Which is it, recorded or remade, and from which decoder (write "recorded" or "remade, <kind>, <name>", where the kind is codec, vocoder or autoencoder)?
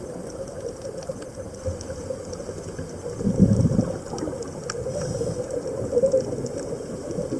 recorded